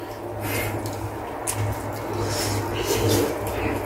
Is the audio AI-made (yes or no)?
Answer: no